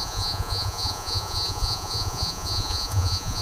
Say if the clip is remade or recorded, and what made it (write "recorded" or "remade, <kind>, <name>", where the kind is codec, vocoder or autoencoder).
remade, vocoder, Vocos